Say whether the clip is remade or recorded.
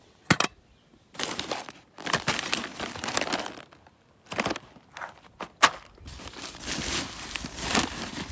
recorded